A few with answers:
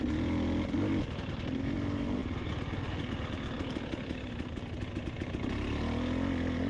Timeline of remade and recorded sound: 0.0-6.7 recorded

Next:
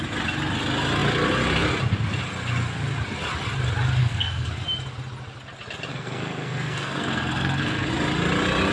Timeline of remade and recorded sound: 0.0-4.0 recorded; 4.0-4.5 remade; 4.5-5.9 recorded; 5.9-7.9 remade; 7.9-8.7 recorded

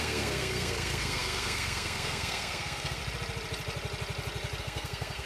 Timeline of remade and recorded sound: 0.0-3.0 remade; 3.0-4.6 recorded; 4.6-5.3 remade

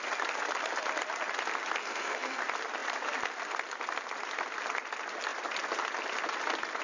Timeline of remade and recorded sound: 0.0-1.8 recorded; 1.8-2.4 remade; 2.4-6.8 recorded

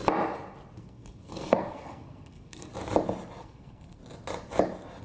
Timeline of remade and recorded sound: 0.0-0.8 recorded; 0.8-2.7 remade; 2.7-3.4 recorded; 3.4-4.0 remade; 4.0-5.0 recorded

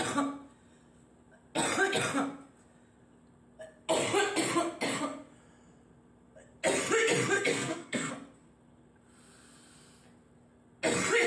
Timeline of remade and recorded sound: 0.0-7.5 recorded; 7.5-8.1 remade; 8.1-11.3 recorded

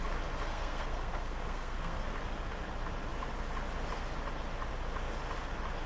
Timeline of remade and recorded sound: 0.0-0.5 recorded; 0.5-2.1 remade; 2.1-5.9 recorded

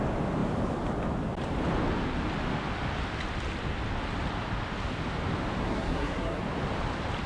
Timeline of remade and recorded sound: 0.0-5.6 recorded; 5.6-6.4 remade; 6.4-7.3 recorded